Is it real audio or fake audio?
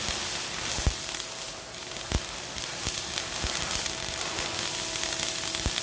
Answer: real